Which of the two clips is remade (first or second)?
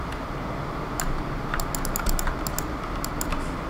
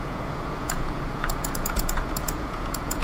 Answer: second